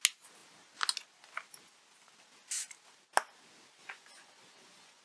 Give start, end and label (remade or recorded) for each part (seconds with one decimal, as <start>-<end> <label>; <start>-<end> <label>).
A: 0.0-3.8 recorded; 3.8-5.0 remade